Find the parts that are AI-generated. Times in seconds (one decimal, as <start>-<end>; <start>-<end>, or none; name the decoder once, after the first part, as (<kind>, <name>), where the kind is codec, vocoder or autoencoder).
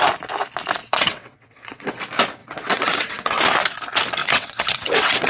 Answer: 0.8-2.0 (vocoder, WaveNeXt); 2.4-3.4; 4.2-5.3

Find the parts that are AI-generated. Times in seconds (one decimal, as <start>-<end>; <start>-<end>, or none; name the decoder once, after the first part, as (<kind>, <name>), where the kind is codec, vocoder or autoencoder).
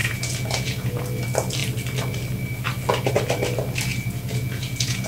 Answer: 0.0-1.0 (vocoder, Vocos); 3.9-5.1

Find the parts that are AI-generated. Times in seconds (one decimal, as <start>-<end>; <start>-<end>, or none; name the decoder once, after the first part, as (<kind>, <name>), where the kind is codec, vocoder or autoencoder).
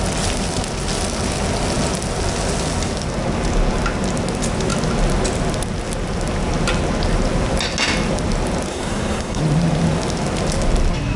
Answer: 8.7-9.4 (codec, SNAC)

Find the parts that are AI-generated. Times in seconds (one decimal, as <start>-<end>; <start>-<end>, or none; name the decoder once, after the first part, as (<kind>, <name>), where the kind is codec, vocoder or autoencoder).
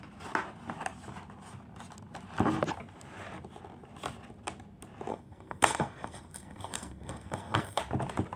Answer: 5.1-7.8 (codec, SNAC)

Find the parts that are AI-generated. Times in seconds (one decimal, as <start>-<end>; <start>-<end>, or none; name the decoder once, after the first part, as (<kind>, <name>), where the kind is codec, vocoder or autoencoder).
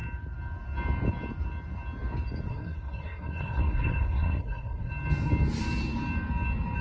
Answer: 2.5-4.9 (codec, SNAC)